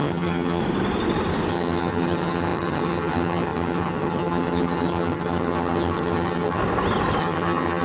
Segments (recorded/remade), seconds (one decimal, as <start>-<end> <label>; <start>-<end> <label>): 0.0-0.6 remade; 0.6-1.5 recorded; 1.5-6.6 remade; 6.6-7.2 recorded; 7.2-7.8 remade